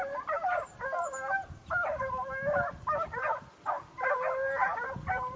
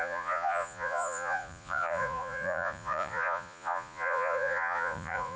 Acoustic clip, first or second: first